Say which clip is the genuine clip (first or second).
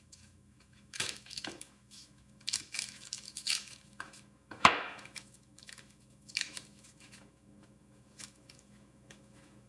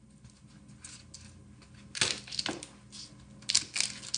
second